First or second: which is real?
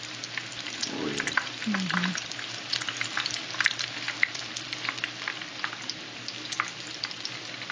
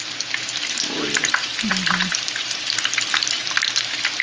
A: first